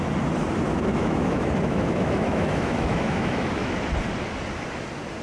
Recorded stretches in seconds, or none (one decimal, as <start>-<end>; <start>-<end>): 0.0-0.7; 3.8-5.2